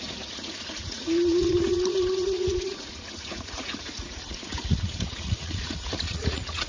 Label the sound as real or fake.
fake